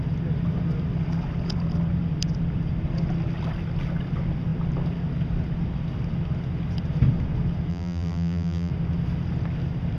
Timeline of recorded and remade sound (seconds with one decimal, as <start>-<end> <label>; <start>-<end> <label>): 0.0-7.7 recorded; 7.7-8.7 remade; 8.7-10.0 recorded